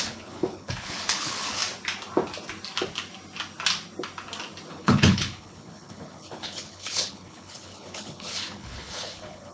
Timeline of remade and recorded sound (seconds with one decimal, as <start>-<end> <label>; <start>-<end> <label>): 0.0-1.6 remade; 1.6-4.7 recorded; 4.7-9.5 remade